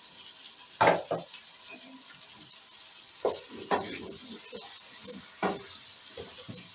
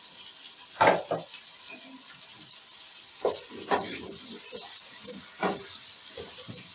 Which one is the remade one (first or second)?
second